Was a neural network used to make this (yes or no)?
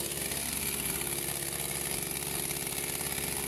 yes